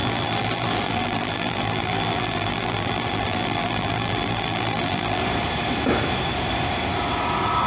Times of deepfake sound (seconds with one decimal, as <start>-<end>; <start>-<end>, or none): 0.0-5.2